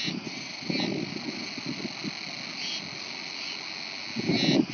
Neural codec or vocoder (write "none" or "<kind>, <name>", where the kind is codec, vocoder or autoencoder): none